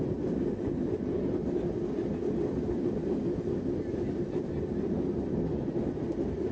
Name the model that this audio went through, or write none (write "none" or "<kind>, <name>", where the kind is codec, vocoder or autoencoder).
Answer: none